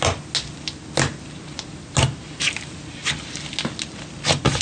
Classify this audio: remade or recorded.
recorded